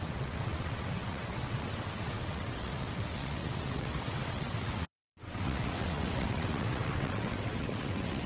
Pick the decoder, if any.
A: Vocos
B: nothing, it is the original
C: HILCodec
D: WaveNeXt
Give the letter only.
D